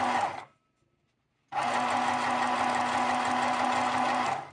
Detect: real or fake real